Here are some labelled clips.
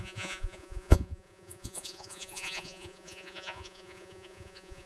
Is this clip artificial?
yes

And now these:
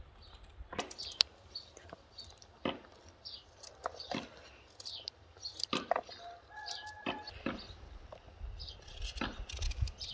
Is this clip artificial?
yes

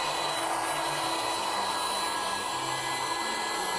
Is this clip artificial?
no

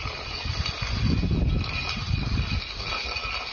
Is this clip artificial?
no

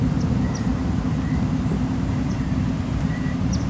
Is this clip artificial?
yes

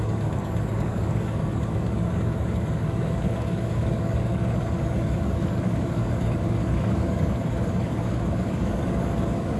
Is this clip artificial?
yes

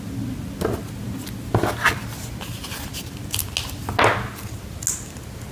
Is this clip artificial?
no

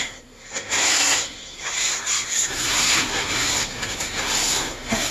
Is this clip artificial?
yes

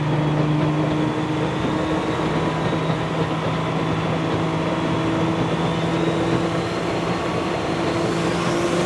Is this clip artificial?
no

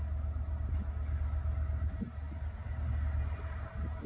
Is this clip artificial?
no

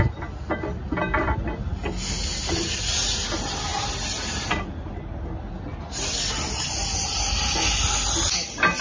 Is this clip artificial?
no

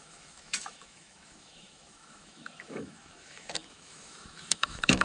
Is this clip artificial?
yes